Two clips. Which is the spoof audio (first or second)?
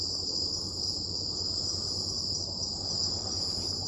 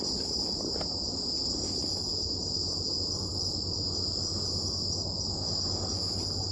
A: first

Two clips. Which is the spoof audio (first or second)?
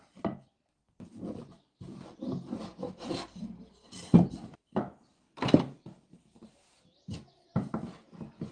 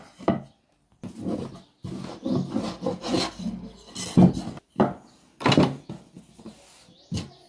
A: first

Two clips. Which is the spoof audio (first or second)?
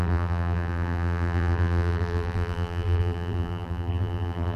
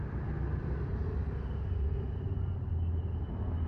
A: first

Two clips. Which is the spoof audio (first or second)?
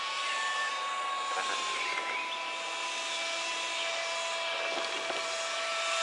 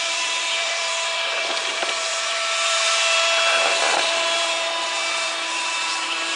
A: second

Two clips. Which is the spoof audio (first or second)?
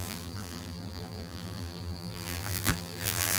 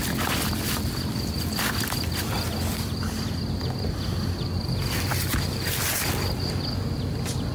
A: first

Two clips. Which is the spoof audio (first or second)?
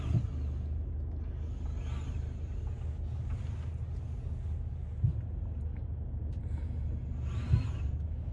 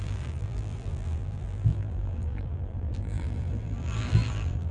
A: second